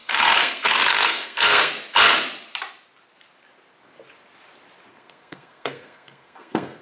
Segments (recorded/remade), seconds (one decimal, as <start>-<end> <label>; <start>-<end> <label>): 0.0-1.7 remade; 1.7-4.9 recorded; 4.9-6.8 remade